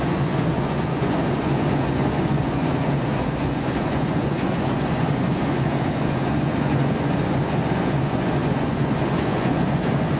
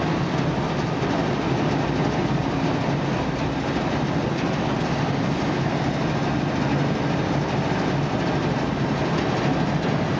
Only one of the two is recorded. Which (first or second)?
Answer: second